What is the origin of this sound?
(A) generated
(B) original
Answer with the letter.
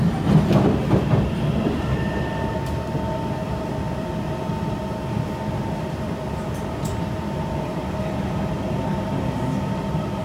B